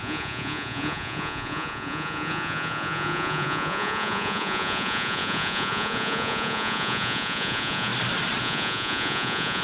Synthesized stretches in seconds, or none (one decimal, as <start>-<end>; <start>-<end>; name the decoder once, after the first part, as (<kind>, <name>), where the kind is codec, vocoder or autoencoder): 0.0-7.9 (vocoder, Vocos); 8.4-9.6

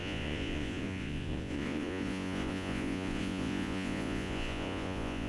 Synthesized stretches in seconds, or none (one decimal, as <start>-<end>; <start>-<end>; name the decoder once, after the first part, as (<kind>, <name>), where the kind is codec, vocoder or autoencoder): 0.0-5.3 (vocoder, Vocos)

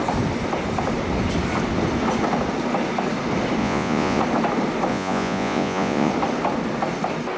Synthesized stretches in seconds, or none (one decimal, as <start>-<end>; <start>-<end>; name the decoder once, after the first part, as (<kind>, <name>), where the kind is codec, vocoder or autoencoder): 3.6-4.2 (vocoder, Vocos); 4.9-6.1

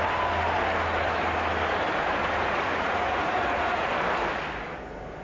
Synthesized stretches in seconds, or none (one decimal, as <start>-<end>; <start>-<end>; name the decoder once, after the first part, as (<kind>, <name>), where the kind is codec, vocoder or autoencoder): 2.2-3.9 (vocoder, Vocos)